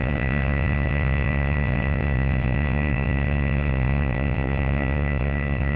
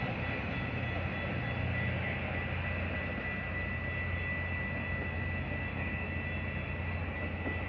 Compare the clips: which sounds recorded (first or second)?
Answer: second